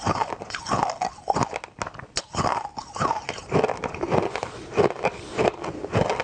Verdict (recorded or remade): recorded